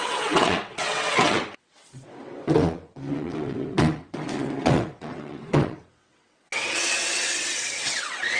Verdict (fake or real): fake